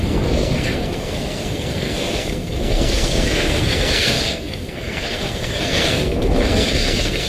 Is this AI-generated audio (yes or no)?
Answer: yes